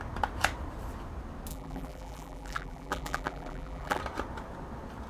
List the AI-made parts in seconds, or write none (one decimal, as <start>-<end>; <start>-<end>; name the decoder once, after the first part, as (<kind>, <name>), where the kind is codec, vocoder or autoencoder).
1.5-4.0 (vocoder, BigVGAN v2)